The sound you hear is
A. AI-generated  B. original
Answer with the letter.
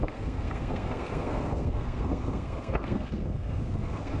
A